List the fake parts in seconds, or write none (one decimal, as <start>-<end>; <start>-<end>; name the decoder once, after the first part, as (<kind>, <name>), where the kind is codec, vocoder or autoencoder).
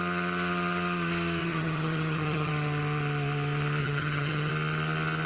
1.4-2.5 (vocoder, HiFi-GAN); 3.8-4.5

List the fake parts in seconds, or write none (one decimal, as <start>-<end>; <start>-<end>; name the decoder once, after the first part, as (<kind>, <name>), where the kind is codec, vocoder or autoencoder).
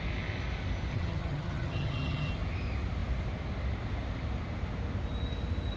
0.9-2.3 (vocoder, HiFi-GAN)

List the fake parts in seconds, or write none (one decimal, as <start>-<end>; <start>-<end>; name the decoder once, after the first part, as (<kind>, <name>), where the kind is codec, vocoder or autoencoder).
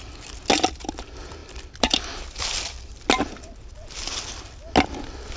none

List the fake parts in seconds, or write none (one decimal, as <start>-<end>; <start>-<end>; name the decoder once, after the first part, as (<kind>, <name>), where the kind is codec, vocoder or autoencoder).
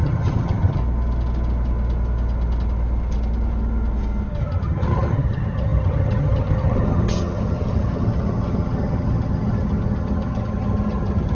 0.0-0.8 (vocoder, HiFi-GAN); 4.4-11.3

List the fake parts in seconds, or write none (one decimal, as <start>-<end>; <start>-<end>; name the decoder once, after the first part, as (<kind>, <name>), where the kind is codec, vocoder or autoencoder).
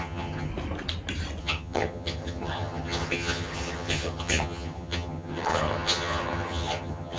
0.0-0.5 (vocoder, HiFi-GAN); 1.4-7.2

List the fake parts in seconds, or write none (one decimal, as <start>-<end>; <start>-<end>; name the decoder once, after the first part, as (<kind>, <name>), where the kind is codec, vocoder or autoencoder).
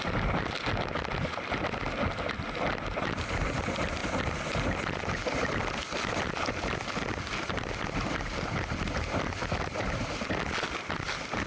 none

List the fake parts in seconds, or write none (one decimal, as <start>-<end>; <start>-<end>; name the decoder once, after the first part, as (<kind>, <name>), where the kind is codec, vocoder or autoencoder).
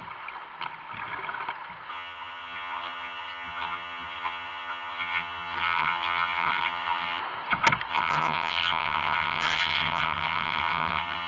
1.9-7.2 (vocoder, HiFi-GAN); 7.9-11.3